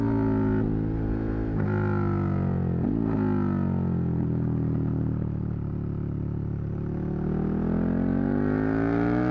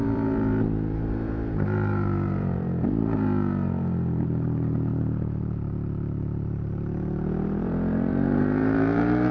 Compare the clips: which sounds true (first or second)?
first